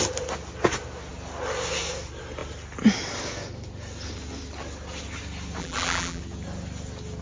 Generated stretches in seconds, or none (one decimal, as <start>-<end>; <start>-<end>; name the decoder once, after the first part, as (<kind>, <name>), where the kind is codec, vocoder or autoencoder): 5.6-6.2 (vocoder, BigVGAN v2)